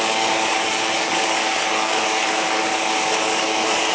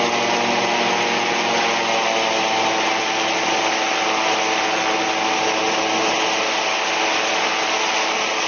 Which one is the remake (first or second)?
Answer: first